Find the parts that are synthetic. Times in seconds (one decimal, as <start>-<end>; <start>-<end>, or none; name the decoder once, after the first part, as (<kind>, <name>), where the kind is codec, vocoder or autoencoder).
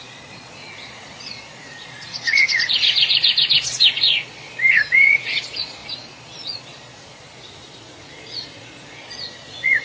0.0-9.8 (vocoder, Vocos)